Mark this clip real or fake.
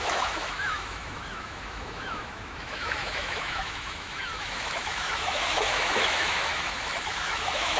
fake